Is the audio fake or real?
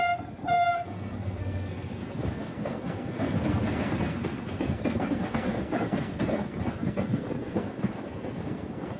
fake